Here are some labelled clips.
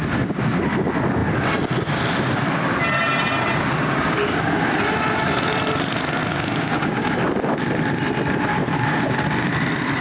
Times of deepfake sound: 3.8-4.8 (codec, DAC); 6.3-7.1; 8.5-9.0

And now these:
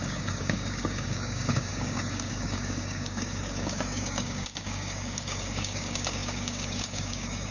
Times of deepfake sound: 0.0-7.5 (codec, DAC)

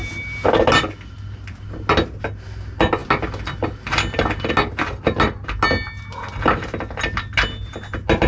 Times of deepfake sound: none

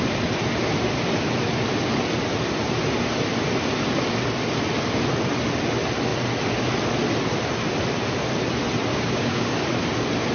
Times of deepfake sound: 8.9-9.5 (codec, DAC)